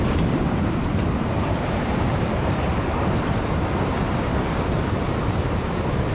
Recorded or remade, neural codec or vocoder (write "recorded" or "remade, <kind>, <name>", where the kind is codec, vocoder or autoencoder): remade, vocoder, BigVGAN v2